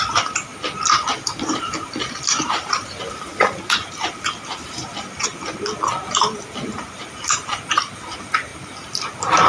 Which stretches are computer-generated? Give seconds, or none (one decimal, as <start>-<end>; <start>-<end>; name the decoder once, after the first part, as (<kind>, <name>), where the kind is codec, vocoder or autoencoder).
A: 0.0-0.5 (vocoder, BigVGAN v2); 1.2-5.3; 6.1-8.5; 9.1-9.5